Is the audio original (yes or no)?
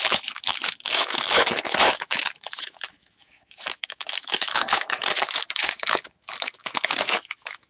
no